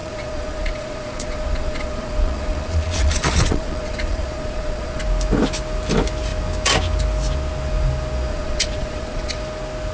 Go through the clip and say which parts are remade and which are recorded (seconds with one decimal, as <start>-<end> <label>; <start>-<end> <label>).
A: 0.0-5.0 remade; 5.0-8.3 recorded; 8.3-9.4 remade; 9.4-9.9 recorded